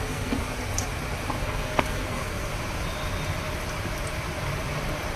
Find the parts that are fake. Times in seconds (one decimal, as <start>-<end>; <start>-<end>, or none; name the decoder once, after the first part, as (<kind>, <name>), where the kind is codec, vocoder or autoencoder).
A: 0.0-0.4 (codec, SNAC); 1.4-2.5